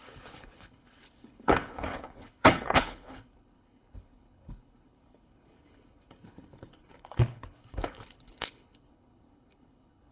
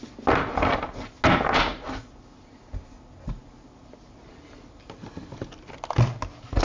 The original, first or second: second